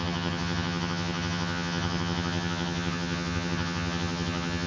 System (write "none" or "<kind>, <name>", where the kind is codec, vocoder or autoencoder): vocoder, HiFi-GAN